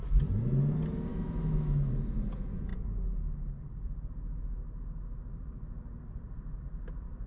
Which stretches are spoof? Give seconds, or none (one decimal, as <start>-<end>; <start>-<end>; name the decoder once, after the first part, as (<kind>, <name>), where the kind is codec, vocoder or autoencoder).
1.1-1.9 (autoencoder, DAC-VAE)